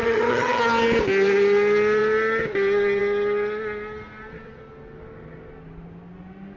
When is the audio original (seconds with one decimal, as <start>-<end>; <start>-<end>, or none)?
0.6-6.6